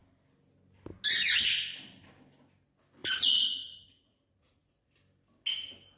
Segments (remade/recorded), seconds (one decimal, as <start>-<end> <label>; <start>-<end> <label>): 0.0-3.0 recorded; 3.0-4.9 remade; 4.9-6.0 recorded

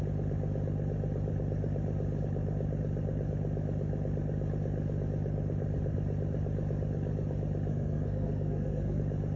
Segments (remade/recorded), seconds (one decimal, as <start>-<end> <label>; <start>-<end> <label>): 0.0-7.7 recorded; 7.7-9.0 remade; 9.0-9.4 recorded

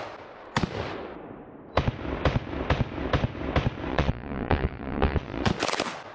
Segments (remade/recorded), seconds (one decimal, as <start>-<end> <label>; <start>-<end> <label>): 0.0-3.9 recorded; 3.9-5.5 remade; 5.5-6.1 recorded

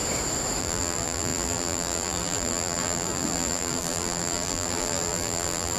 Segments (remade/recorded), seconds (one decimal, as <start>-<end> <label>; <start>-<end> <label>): 0.0-0.6 recorded; 0.6-5.8 remade